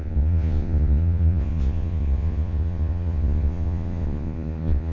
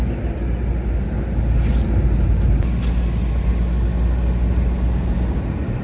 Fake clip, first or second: first